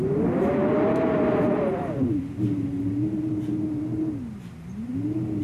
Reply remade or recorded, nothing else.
recorded